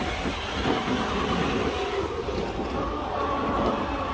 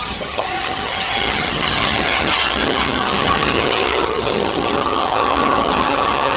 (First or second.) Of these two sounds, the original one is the first